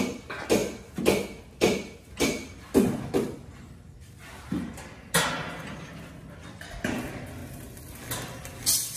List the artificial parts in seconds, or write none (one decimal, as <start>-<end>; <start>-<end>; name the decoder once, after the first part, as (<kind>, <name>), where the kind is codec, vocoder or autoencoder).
none